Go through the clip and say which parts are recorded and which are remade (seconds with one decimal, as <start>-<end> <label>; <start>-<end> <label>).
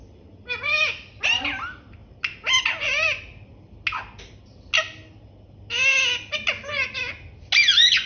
0.0-8.1 recorded